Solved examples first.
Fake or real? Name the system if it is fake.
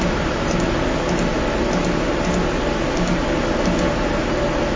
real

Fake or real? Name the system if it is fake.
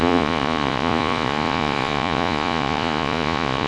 fake, vocoder, Vocos